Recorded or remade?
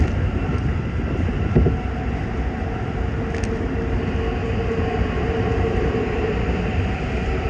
recorded